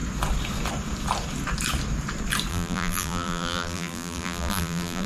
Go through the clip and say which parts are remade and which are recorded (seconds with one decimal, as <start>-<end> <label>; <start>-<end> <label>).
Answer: 0.0-2.5 recorded; 2.5-5.1 remade